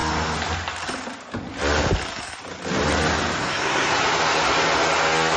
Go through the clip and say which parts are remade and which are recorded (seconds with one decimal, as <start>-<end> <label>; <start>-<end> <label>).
0.0-3.4 recorded; 3.4-3.9 remade; 3.9-5.4 recorded